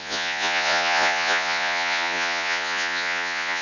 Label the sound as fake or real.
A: fake